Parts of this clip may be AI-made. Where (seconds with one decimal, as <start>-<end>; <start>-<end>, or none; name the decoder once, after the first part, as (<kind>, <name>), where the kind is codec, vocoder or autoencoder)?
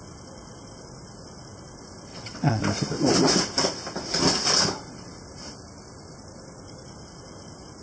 2.1-2.6 (vocoder, WaveNeXt)